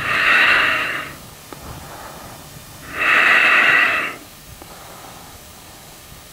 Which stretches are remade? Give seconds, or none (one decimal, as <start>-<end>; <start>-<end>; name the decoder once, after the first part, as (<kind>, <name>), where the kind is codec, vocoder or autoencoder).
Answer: 0.0-1.4 (codec, DAC); 3.5-6.3